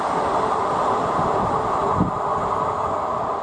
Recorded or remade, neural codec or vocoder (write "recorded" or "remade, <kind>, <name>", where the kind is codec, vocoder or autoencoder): recorded